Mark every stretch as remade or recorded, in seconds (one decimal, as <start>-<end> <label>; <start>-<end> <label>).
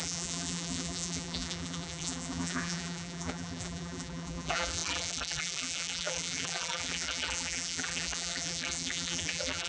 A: 0.0-9.7 remade